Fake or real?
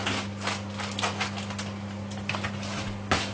real